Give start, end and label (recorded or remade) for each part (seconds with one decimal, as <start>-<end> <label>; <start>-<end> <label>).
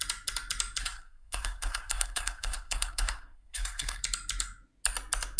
0.0-0.8 recorded; 0.8-4.0 remade; 4.0-5.4 recorded